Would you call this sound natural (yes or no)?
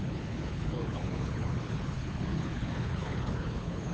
no